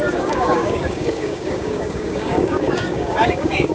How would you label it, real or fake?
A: fake